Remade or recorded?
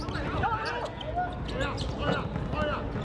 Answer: recorded